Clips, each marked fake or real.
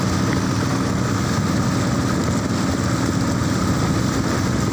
real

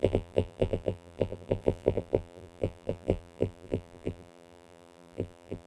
fake